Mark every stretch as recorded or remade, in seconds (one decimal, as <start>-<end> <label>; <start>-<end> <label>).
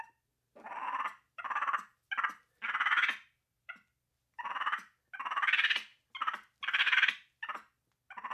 0.0-8.3 recorded